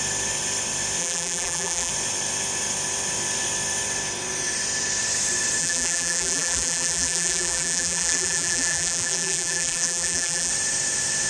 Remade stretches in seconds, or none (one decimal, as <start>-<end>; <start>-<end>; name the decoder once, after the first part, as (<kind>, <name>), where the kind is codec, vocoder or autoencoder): 1.0-1.9 (vocoder, BigVGAN v2); 5.6-10.5